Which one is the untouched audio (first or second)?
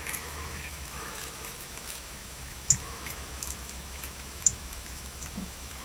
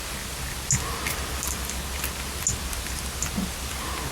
second